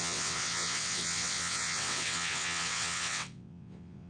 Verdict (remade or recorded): remade